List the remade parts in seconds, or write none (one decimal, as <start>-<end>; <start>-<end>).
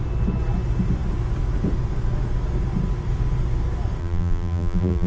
4.0-5.1